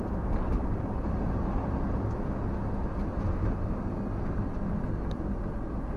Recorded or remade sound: recorded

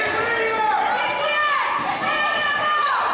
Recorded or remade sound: recorded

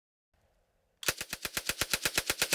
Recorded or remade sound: recorded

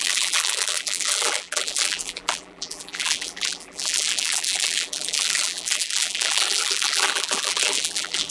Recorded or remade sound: remade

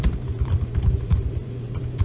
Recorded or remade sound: remade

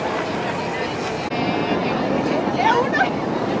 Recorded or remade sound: recorded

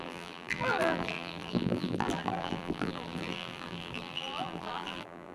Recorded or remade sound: remade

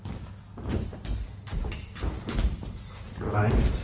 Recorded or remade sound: recorded